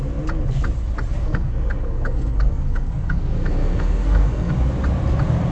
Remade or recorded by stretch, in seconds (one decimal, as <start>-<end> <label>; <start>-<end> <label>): 0.0-1.2 recorded; 1.2-4.5 remade; 4.5-5.5 recorded